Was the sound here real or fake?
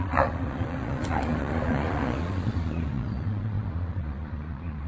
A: fake